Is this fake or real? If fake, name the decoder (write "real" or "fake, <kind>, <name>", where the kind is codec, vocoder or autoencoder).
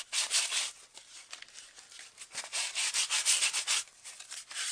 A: real